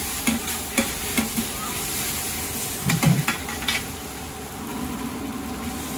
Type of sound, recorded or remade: recorded